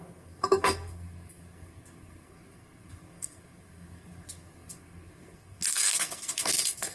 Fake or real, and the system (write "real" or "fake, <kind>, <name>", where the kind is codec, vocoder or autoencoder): fake, codec, SNAC